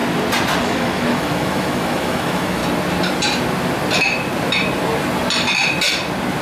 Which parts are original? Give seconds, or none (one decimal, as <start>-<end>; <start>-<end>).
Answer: 0.0-0.6; 2.6-6.4